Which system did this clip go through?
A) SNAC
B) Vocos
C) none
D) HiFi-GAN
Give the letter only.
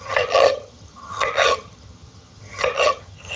D